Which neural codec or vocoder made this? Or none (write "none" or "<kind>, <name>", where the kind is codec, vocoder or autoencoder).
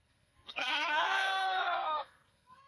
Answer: codec, SNAC